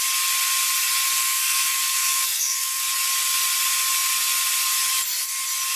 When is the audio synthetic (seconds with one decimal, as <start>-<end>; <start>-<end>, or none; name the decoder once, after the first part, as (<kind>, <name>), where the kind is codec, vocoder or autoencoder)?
1.2-2.8 (codec, SNAC)